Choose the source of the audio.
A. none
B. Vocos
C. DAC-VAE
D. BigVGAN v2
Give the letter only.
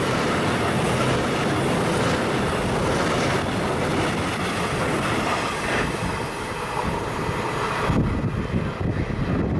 A